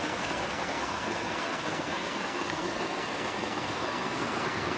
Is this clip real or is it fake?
fake